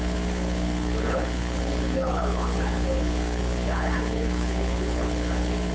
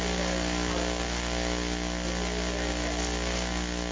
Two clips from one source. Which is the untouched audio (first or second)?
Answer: second